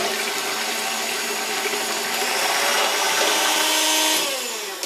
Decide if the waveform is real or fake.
real